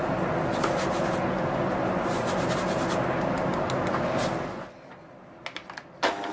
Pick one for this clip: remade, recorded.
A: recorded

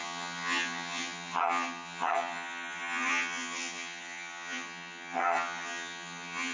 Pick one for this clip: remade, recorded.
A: remade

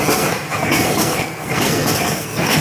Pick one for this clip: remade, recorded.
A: remade